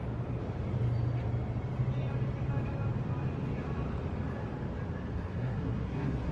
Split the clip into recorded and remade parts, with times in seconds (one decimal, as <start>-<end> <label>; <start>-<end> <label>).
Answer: 0.0-5.1 recorded; 5.1-6.3 remade